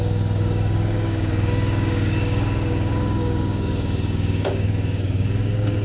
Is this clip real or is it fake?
fake